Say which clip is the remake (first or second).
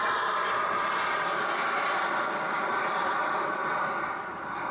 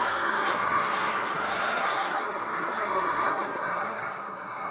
second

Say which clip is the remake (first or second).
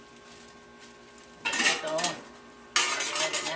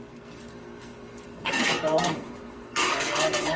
second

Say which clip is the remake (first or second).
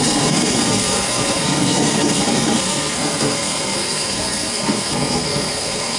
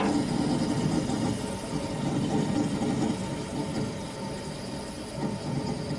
first